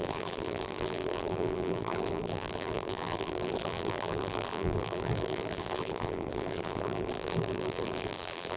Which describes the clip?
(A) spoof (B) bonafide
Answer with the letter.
A